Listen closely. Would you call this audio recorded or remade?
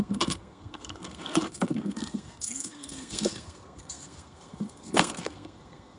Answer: remade